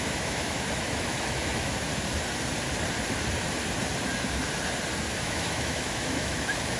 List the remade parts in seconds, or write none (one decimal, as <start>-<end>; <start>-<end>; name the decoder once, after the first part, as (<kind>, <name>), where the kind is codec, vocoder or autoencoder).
0.0-1.9 (autoencoder, DAC-VAE); 5.2-6.8